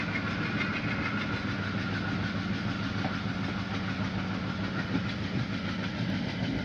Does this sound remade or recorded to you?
recorded